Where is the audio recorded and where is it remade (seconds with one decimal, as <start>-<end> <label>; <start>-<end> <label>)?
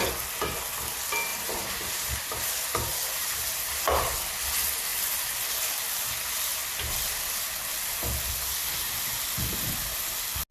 0.0-1.3 recorded; 1.3-2.5 remade; 2.5-3.2 recorded; 3.2-4.0 remade; 4.0-10.5 recorded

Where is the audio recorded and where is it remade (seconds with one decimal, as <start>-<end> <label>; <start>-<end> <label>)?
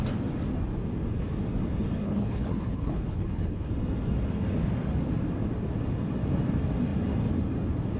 0.0-2.0 recorded; 2.0-3.7 remade; 3.7-8.0 recorded